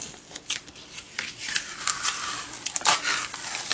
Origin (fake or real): real